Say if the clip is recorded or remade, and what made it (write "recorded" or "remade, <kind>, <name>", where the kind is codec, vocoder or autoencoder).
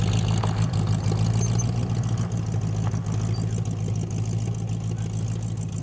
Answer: recorded